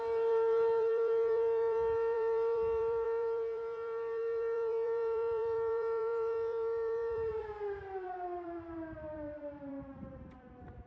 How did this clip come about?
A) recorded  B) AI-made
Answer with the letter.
B